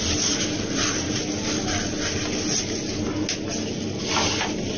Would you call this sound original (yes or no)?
yes